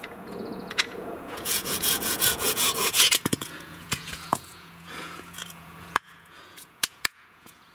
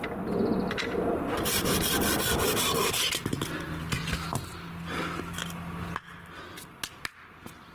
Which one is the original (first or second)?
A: second